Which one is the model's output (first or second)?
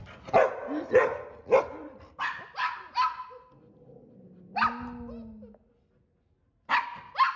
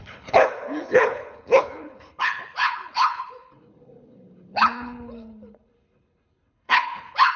second